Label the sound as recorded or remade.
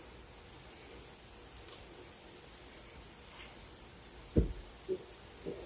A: recorded